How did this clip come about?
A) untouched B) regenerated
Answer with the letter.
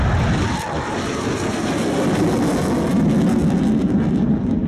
A